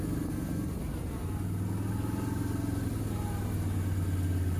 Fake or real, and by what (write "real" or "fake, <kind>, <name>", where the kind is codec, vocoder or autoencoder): real